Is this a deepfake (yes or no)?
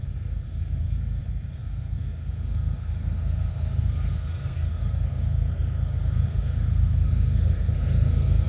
yes